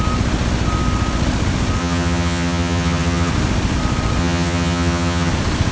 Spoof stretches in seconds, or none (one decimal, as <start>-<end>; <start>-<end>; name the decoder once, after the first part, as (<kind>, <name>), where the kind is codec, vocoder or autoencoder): 1.8-3.3 (vocoder, HiFi-GAN); 4.2-5.3